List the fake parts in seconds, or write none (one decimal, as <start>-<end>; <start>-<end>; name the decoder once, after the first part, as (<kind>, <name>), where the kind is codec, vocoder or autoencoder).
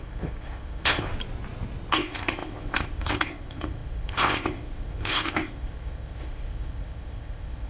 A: 0.0-1.1 (codec, ZipCodec); 1.9-7.7